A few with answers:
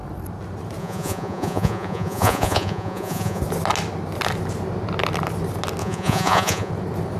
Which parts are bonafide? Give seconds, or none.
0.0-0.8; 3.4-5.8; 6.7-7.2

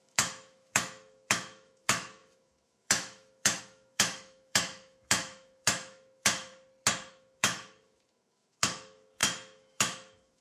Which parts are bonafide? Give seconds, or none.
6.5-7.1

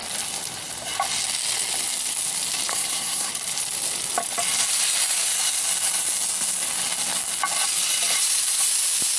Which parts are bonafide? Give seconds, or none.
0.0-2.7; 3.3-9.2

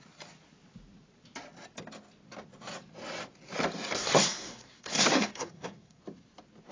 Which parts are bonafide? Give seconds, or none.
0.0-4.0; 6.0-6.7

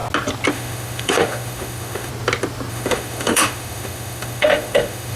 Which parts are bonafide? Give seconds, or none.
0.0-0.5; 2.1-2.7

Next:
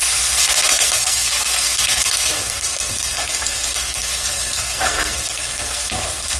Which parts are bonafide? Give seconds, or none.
none

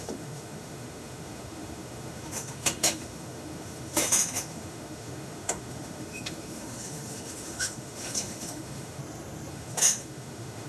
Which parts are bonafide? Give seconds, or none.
9.0-9.5